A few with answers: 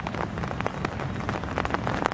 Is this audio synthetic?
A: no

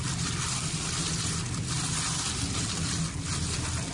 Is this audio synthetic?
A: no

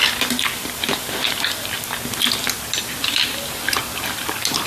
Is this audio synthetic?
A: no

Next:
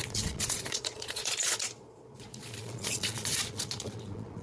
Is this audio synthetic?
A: yes